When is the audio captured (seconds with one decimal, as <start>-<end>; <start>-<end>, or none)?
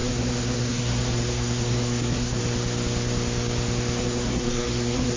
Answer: 2.4-4.0